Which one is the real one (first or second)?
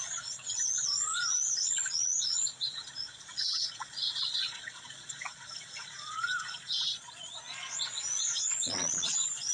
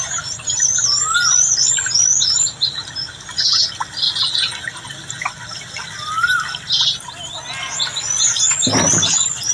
second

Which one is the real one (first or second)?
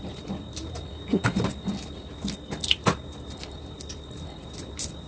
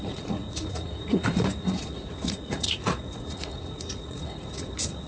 first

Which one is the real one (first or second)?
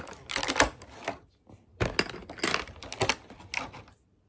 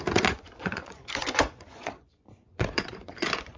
first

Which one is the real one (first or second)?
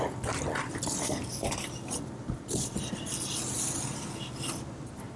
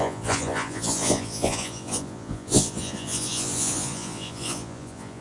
first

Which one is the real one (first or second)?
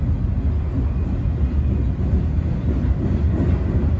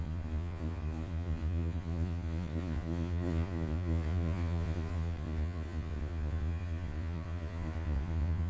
first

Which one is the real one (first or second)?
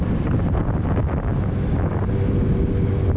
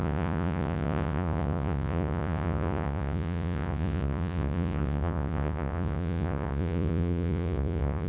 first